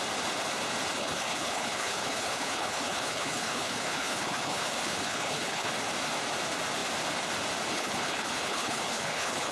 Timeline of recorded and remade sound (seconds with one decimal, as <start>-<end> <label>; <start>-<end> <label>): 0.0-1.0 recorded; 1.0-5.7 remade; 5.7-7.7 recorded; 7.7-9.5 remade